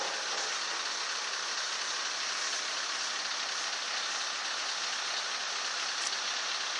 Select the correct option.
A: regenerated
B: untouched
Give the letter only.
B